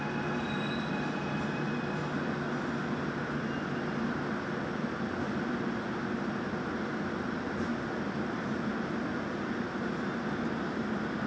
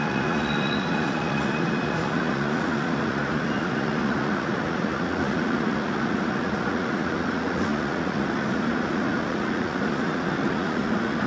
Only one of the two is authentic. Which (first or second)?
first